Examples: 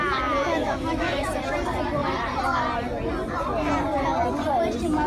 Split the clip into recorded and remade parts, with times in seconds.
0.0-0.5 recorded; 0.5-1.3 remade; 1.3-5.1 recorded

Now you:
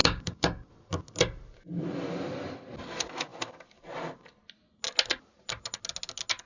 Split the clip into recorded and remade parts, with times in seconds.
0.0-0.7 remade; 0.7-6.5 recorded

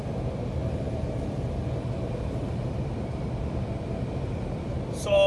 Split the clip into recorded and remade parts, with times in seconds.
0.0-5.3 recorded

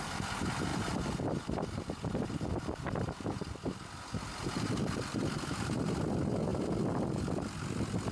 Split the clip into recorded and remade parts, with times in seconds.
0.0-0.7 recorded; 0.7-5.2 remade; 5.2-6.5 recorded; 6.5-8.1 remade

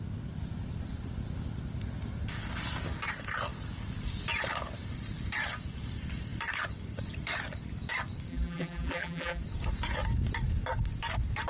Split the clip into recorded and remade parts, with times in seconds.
0.0-8.3 recorded; 8.3-9.4 remade; 9.4-11.5 recorded

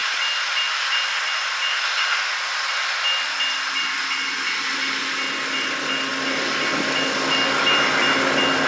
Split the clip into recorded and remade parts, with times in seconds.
0.0-8.7 recorded

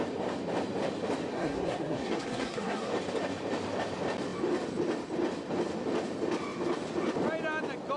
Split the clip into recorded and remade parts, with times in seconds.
0.0-1.3 recorded; 1.3-2.9 remade; 2.9-8.0 recorded

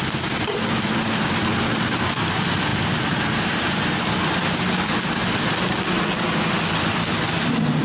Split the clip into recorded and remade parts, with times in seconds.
0.0-2.7 recorded; 2.7-4.1 remade; 4.1-7.8 recorded